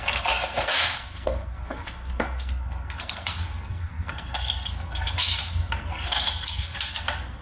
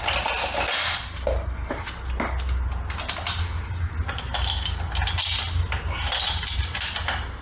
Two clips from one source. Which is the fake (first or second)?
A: first